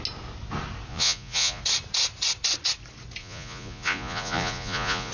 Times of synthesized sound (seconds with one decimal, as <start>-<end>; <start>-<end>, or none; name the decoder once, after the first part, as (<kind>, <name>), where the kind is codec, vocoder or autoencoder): 0.9-1.6 (vocoder, Vocos); 3.2-5.1